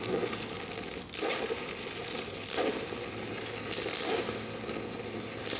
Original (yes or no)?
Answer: yes